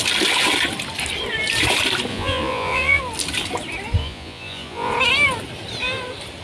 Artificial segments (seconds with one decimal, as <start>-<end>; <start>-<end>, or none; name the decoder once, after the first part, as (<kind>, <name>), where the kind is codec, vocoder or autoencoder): 2.1-3.0 (vocoder, Vocos); 4.0-4.9